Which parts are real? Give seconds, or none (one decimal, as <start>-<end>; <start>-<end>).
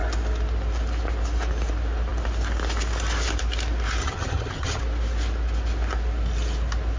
0.0-4.0; 4.8-7.0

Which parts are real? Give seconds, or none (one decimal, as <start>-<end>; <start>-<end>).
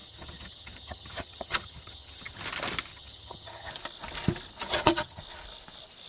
2.4-2.9; 3.7-4.6; 5.2-6.1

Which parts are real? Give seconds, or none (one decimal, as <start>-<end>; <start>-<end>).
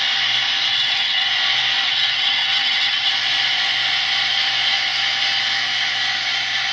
0.0-0.7; 1.3-1.9; 3.1-6.7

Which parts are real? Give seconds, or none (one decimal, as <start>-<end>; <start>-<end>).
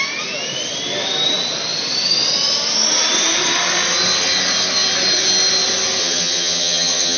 0.0-6.0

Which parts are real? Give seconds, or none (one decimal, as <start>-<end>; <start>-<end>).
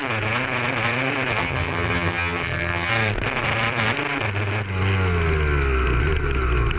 0.0-1.4; 2.9-6.8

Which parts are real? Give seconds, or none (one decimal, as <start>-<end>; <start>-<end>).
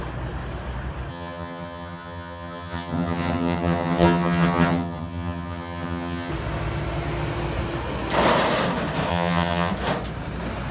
0.0-1.1; 6.3-9.1; 9.7-10.7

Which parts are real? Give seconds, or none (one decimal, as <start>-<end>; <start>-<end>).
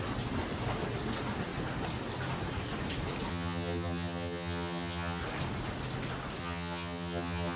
0.0-3.3; 5.2-6.4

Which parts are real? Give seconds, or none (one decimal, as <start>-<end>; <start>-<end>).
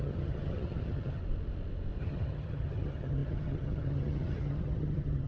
1.2-2.0